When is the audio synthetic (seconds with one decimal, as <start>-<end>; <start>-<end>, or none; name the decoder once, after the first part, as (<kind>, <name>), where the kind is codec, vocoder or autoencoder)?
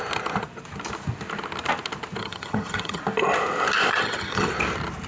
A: 2.2-3.0 (vocoder, HiFi-GAN); 3.9-4.5